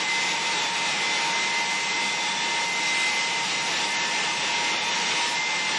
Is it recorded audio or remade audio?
recorded